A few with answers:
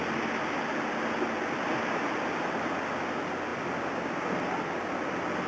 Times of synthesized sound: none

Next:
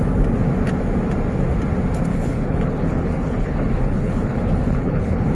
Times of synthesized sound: 2.1-5.3 (codec, HILCodec)

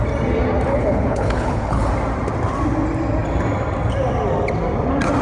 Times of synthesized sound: 0.7-1.9 (codec, HILCodec)